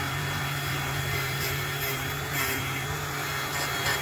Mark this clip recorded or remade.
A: remade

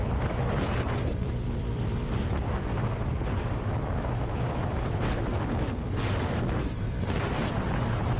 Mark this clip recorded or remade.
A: recorded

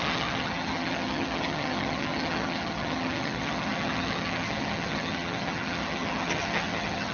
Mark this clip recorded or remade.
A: remade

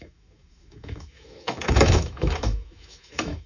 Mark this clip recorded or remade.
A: remade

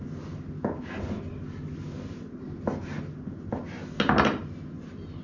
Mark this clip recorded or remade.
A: recorded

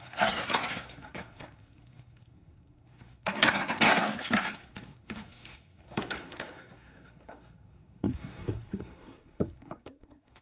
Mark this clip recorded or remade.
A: remade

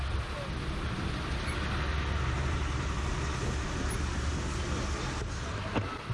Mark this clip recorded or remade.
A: recorded